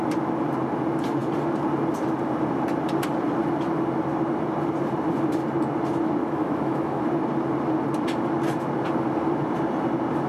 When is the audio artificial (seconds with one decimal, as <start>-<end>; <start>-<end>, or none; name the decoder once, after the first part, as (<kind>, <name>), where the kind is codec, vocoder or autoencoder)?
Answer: 6.2-7.0 (autoencoder, DAC-VAE)